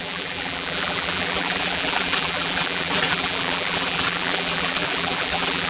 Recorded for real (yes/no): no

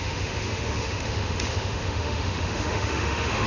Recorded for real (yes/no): no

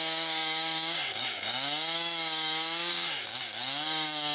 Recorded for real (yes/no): no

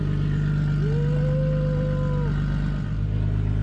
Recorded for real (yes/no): yes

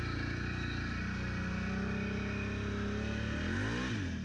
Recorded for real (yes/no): yes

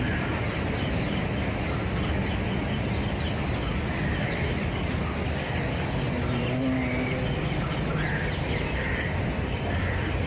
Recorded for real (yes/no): yes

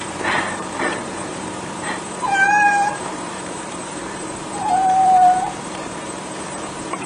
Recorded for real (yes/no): no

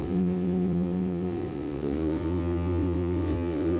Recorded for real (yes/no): no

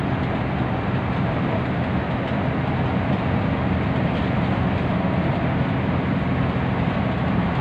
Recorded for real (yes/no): yes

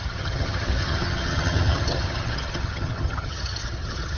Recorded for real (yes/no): no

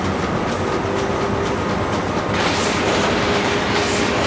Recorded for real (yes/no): yes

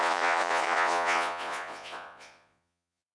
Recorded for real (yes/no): no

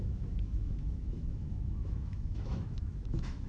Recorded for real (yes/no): no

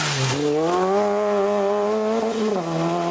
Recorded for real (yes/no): yes